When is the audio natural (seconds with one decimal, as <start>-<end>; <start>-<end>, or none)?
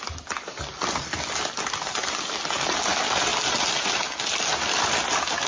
0.0-5.5